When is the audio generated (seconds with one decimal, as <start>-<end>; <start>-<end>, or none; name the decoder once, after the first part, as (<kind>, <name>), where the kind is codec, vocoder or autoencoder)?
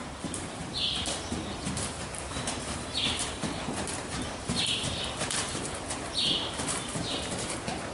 0.0-7.9 (vocoder, BigVGAN v2)